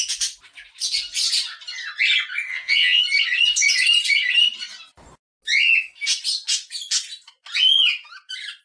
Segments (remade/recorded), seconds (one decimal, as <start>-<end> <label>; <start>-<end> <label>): 0.0-2.5 recorded; 2.5-3.0 remade; 3.0-8.6 recorded